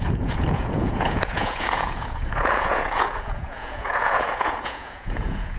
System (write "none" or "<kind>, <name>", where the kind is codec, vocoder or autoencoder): vocoder, Vocos